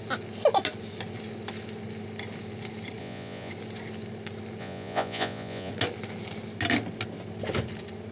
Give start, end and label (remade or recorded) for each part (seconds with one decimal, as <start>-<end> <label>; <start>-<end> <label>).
0.0-3.0 recorded; 3.0-3.5 remade; 3.5-4.6 recorded; 4.6-5.7 remade; 5.7-8.1 recorded